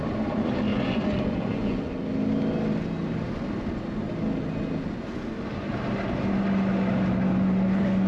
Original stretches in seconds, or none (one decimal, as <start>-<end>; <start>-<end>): 0.0-0.7; 1.9-8.1

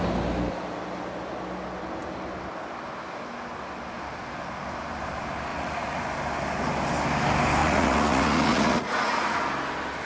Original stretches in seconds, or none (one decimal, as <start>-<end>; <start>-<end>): 0.0-5.5; 6.0-7.6; 9.4-10.1

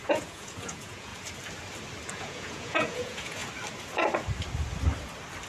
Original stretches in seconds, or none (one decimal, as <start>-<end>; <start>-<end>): 1.1-2.1; 3.4-5.5